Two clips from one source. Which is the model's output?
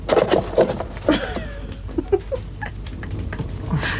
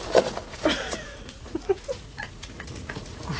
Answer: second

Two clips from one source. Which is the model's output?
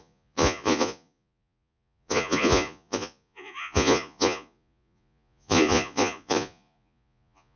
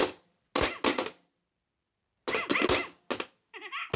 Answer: first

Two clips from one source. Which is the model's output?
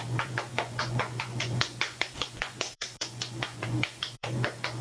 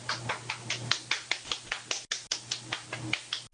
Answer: first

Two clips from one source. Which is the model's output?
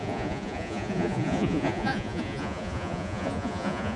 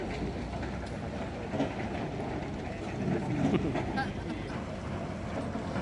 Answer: first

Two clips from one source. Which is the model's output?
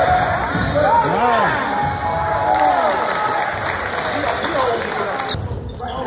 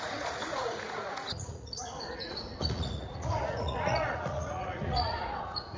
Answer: second